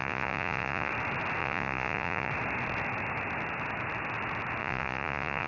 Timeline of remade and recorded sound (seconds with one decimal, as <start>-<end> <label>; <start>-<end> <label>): 0.0-0.9 remade; 0.9-1.4 recorded; 1.4-2.3 remade; 2.3-4.6 recorded; 4.6-5.5 remade